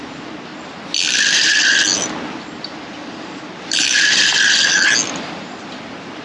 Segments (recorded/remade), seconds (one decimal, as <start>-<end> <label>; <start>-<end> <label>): 0.0-0.5 remade; 0.5-2.5 recorded; 2.5-4.3 remade; 4.3-5.4 recorded; 5.4-6.2 remade